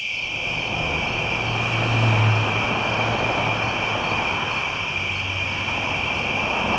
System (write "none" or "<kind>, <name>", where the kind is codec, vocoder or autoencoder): none